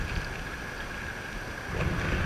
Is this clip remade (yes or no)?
no